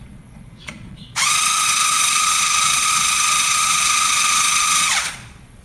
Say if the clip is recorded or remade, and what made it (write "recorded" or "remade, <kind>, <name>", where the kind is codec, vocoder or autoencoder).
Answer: remade, vocoder, Vocos